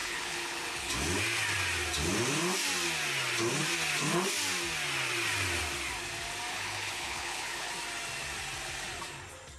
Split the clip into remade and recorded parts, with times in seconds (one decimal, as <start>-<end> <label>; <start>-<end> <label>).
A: 0.0-0.9 remade; 0.9-6.5 recorded; 6.5-7.7 remade; 7.7-9.6 recorded